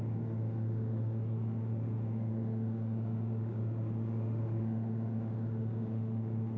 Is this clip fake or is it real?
fake